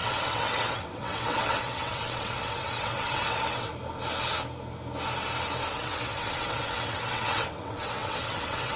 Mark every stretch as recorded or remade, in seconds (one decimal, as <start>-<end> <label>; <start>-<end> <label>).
0.0-3.7 remade; 3.7-5.7 recorded; 5.7-8.8 remade